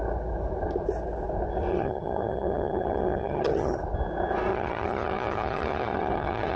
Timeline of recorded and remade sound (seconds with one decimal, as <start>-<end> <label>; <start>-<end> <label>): 0.0-1.7 recorded; 1.7-3.8 remade; 3.8-4.5 recorded; 4.5-6.6 remade